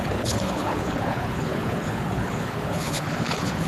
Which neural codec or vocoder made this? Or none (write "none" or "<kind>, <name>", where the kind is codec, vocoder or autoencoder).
codec, HILCodec